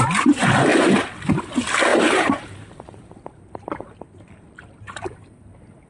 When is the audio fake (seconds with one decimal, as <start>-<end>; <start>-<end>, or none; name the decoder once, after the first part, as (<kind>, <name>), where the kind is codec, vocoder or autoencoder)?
1.9-5.4 (vocoder, BigVGAN v2)